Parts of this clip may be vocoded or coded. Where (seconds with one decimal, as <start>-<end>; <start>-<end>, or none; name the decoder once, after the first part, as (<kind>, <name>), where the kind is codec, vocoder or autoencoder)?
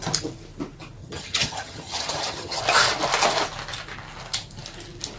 1.0-2.6 (vocoder, HiFi-GAN)